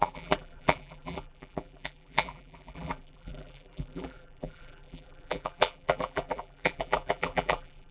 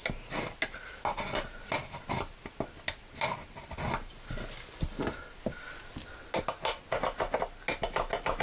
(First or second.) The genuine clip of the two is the second